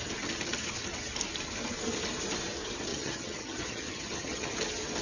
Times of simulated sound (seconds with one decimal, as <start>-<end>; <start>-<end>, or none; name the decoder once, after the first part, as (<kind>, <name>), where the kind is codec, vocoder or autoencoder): 2.9-4.6 (vocoder, HiFi-GAN)